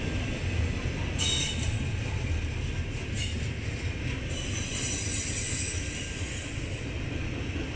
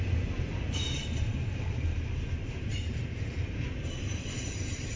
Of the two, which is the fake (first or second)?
second